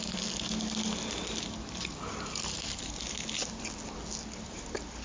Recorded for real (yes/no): yes